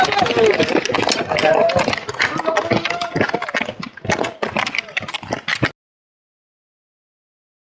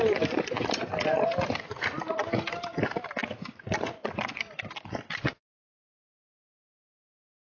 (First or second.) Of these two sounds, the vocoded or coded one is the second